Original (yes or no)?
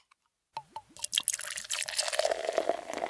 yes